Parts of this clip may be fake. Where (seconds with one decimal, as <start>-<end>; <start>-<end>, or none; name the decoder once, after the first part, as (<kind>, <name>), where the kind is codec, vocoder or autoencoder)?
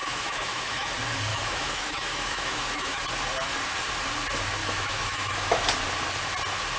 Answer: 0.0-0.9 (autoencoder, DAC-VAE); 1.3-3.0; 4.6-5.7